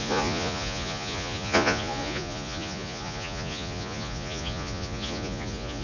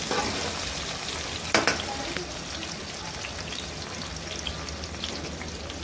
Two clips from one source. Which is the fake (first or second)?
first